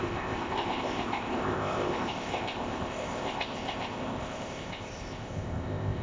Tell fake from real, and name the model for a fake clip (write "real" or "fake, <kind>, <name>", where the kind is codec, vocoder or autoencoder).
fake, codec, ZipCodec